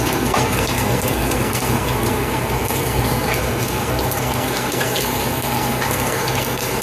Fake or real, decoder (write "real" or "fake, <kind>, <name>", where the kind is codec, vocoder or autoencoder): fake, codec, SNAC